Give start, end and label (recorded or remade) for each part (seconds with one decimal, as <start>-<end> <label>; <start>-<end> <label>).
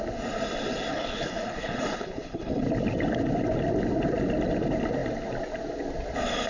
0.0-0.9 recorded; 0.9-2.6 remade; 2.6-6.5 recorded